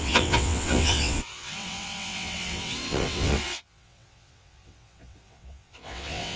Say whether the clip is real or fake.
fake